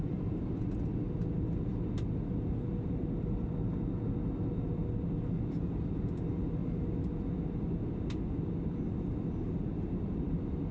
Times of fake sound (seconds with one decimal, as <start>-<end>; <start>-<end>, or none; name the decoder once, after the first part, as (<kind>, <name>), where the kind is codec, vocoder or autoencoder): none